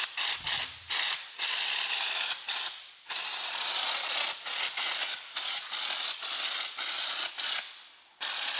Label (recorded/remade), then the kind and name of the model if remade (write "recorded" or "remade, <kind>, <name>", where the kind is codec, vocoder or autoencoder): recorded